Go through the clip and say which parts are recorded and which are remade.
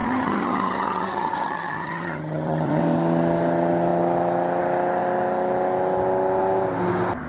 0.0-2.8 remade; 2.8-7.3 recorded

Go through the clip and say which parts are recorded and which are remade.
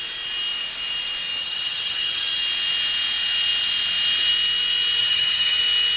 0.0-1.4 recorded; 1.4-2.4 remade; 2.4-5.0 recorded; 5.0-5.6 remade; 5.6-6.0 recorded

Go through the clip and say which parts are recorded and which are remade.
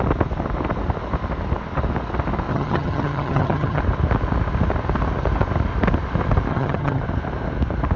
0.0-2.5 recorded; 2.5-3.8 remade; 3.8-6.5 recorded; 6.5-7.0 remade; 7.0-8.0 recorded